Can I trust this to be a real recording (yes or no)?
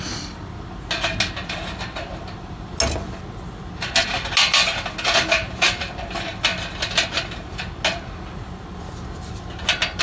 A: yes